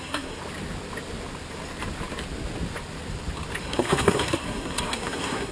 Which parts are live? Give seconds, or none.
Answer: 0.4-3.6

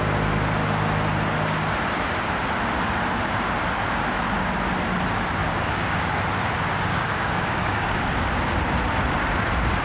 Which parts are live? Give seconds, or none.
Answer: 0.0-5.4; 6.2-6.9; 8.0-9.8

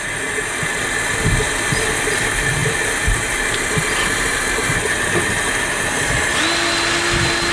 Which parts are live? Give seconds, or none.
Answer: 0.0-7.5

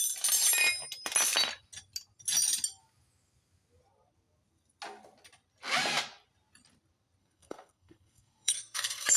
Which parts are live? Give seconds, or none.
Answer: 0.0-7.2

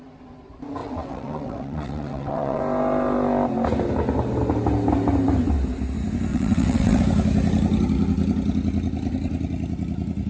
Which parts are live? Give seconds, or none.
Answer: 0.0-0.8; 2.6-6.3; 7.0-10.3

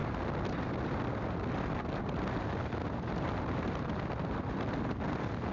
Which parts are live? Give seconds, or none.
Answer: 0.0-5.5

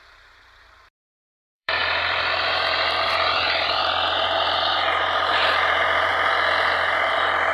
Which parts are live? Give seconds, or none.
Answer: 6.1-7.5